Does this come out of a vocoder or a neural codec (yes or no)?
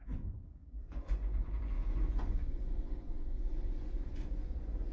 yes